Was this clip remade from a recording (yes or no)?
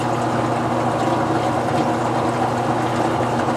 no